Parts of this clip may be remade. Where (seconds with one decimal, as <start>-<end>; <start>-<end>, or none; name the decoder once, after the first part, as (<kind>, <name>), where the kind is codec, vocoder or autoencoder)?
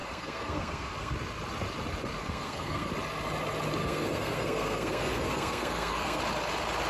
0.0-1.1 (codec, SNAC); 2.2-2.9; 3.8-6.2